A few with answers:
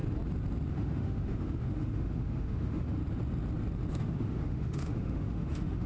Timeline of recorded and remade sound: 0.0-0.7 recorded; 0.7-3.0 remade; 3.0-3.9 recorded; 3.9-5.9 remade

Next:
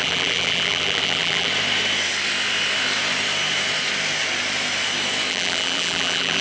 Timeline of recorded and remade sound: 0.0-1.5 remade; 1.5-5.3 recorded; 5.3-6.4 remade

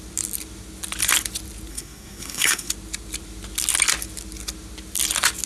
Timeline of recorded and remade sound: 0.0-1.7 recorded; 1.7-2.7 remade; 2.7-5.5 recorded

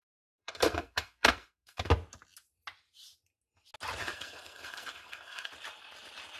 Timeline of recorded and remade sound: 0.0-1.9 remade; 1.9-4.0 recorded; 4.0-5.5 remade; 5.5-6.4 recorded

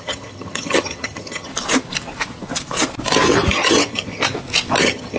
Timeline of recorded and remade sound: 0.0-1.5 remade; 1.5-3.5 recorded; 3.5-4.2 remade; 4.2-4.8 recorded; 4.8-5.2 remade

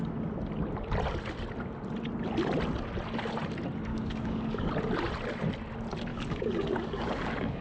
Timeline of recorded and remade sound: 0.0-3.9 recorded; 3.9-4.7 remade; 4.7-6.1 recorded; 6.1-7.6 remade